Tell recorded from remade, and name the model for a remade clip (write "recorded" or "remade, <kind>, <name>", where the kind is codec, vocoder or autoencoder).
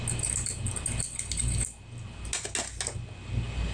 recorded